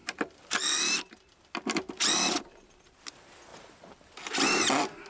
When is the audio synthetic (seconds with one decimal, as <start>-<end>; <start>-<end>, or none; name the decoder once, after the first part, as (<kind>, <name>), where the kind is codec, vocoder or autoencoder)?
none